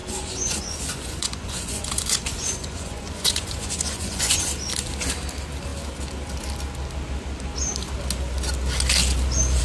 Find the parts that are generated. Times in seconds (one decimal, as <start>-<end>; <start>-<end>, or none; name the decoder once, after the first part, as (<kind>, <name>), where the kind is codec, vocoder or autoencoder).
0.0-4.4 (vocoder, Vocos)